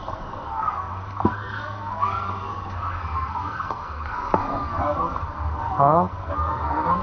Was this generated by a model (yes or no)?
yes